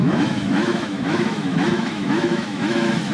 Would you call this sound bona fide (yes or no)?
no